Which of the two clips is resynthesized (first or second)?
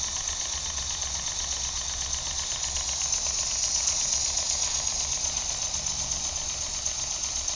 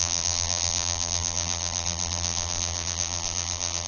second